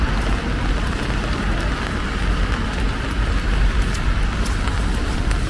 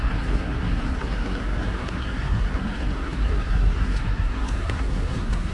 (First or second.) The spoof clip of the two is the second